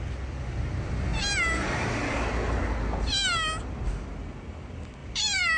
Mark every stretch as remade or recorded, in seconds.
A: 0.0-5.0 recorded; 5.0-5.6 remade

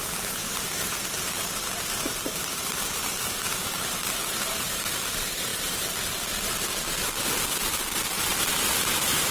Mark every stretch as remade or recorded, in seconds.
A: 0.0-5.5 remade; 5.5-8.4 recorded; 8.4-9.3 remade

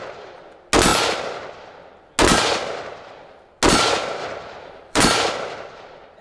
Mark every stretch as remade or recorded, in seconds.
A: 0.0-4.2 recorded; 4.2-5.0 remade; 5.0-6.2 recorded

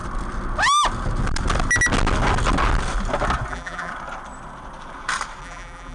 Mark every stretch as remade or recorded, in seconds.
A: 0.0-3.5 recorded; 3.5-3.9 remade; 3.9-5.4 recorded; 5.4-5.9 remade